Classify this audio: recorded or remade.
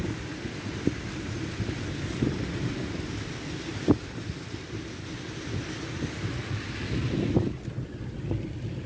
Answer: recorded